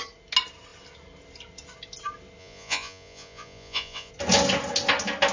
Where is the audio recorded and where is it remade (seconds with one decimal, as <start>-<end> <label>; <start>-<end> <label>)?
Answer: 0.0-2.4 recorded; 2.4-4.1 remade; 4.1-5.3 recorded